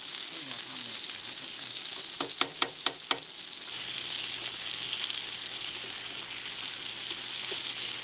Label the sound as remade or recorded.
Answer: recorded